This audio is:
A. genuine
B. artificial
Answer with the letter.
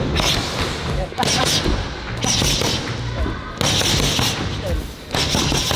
A